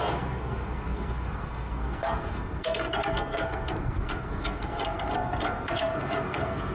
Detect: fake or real fake